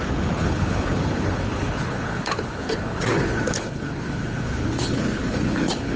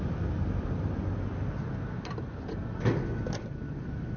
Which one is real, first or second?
second